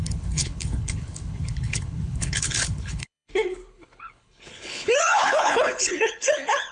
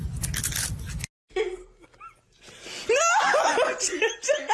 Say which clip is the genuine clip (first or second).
second